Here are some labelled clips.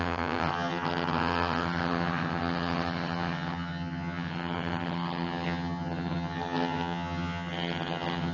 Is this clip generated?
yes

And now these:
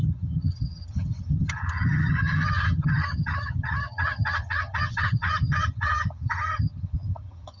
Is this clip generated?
yes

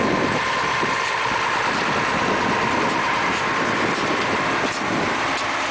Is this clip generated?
no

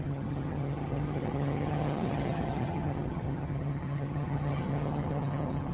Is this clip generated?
yes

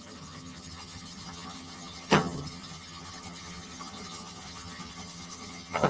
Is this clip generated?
yes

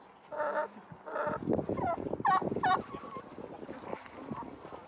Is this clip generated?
no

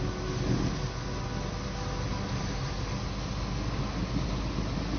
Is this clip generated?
no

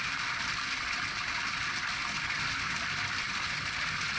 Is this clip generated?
no